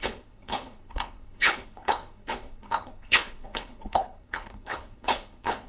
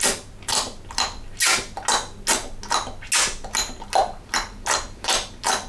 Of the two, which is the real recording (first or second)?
second